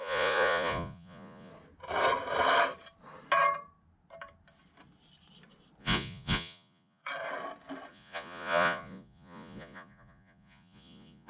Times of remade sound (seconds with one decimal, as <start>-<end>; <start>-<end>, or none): 0.0-1.5; 5.8-7.0; 7.9-11.3